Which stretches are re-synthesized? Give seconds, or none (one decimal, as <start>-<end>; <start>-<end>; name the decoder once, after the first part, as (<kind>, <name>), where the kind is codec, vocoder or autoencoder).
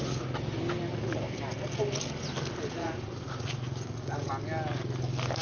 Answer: 2.8-4.3 (vocoder, Vocos)